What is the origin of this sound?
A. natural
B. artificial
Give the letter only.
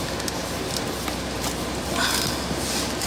A